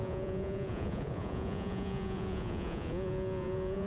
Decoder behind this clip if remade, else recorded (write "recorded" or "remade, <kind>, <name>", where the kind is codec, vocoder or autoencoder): remade, vocoder, Vocos